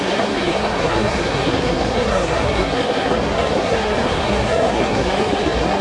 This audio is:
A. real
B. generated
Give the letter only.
B